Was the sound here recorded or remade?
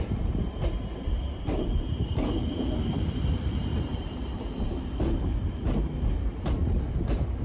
remade